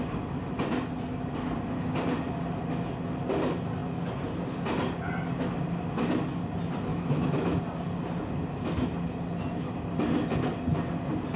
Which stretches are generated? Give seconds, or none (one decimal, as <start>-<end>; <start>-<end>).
6.9-7.6